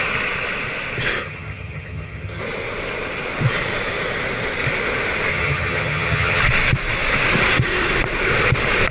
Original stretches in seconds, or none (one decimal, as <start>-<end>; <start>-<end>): 0.0-1.2; 2.4-5.3; 6.4-8.9